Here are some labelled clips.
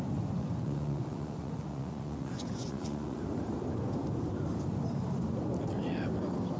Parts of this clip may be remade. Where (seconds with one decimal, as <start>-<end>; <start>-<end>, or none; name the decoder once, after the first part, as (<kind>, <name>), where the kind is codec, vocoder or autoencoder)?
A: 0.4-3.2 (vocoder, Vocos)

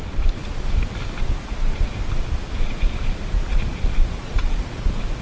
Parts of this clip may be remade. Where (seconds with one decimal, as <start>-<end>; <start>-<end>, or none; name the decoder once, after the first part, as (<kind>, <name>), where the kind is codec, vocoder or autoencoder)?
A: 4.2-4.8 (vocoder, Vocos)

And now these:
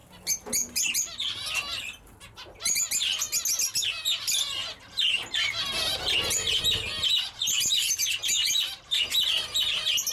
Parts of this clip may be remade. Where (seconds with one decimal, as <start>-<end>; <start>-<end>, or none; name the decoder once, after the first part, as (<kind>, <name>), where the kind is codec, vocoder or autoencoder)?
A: none

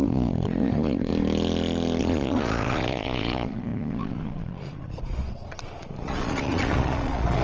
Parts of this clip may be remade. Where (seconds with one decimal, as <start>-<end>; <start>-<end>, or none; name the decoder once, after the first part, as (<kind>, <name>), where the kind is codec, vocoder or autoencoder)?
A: 0.0-1.1 (vocoder, Vocos); 2.0-7.4

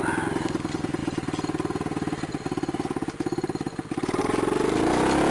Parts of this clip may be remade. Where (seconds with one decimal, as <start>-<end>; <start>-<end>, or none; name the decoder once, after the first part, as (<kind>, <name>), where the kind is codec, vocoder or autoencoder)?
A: none

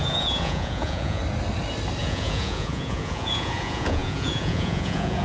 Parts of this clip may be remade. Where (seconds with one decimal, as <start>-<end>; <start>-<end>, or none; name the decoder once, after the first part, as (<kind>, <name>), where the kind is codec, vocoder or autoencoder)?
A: 0.0-1.2 (vocoder, Vocos); 2.0-5.2

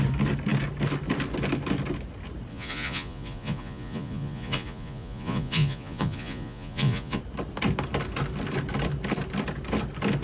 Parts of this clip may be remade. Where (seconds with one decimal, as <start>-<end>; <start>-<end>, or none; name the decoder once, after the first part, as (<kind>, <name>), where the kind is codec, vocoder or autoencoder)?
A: 2.5-7.2 (vocoder, Vocos)